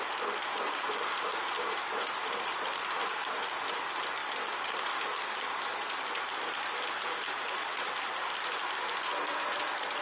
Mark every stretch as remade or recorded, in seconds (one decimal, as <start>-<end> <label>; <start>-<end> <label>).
0.0-10.0 recorded